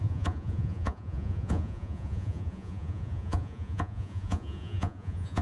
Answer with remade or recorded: remade